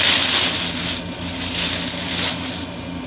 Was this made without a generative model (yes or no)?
yes